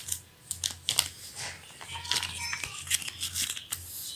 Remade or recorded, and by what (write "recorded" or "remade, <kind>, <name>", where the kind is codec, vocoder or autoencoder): recorded